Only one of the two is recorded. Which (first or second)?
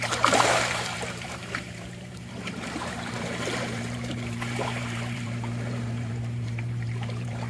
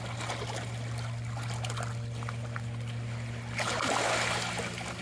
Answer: second